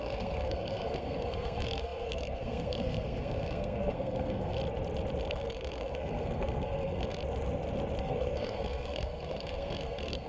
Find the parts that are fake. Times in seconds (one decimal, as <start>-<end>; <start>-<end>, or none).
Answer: 0.0-4.6; 5.3-7.2; 8.0-10.3

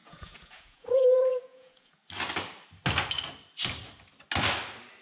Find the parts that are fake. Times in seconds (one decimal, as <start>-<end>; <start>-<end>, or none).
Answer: 0.0-1.9

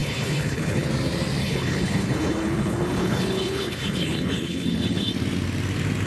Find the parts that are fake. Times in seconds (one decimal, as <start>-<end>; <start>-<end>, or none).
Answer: 0.0-0.9; 1.4-5.1

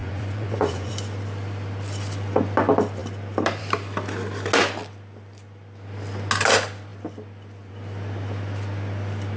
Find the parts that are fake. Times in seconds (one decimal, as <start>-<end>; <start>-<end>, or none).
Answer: 0.0-0.9

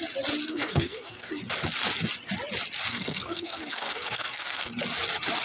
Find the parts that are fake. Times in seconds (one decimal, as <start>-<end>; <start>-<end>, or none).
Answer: 0.5-1.3; 2.9-4.7

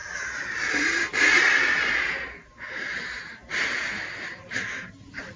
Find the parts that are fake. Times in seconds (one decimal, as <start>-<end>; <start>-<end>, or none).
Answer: 1.9-5.4